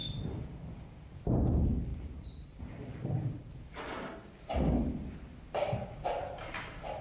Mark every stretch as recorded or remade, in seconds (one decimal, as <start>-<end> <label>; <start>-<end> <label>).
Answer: 0.0-1.9 recorded; 1.9-2.6 remade; 2.6-7.0 recorded